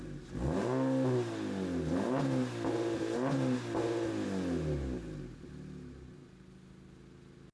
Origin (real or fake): real